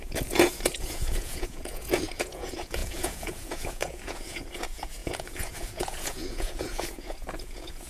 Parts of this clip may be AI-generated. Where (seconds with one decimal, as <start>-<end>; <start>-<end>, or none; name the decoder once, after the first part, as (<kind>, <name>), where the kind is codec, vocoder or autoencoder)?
0.0-7.9 (vocoder, Vocos)